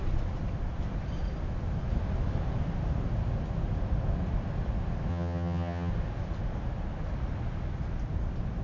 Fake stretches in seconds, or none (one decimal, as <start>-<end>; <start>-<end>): 5.1-5.9